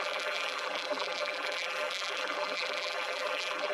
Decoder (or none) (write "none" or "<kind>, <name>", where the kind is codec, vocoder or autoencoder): vocoder, BigVGAN v2